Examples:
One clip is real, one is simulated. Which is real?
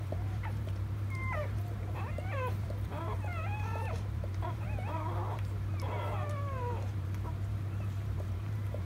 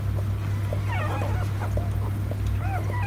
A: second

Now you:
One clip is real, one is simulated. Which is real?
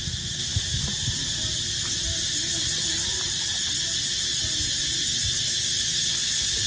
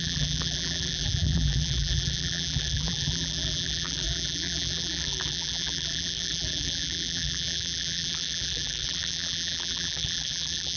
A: first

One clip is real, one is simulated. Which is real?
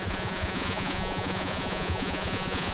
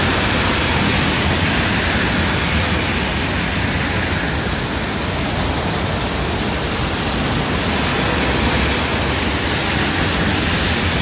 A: second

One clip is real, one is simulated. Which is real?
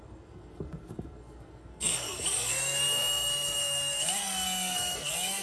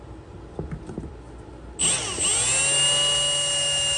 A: second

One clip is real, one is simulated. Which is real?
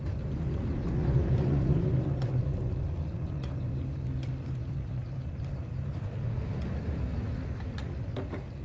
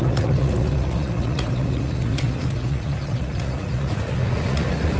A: first